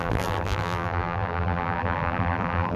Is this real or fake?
fake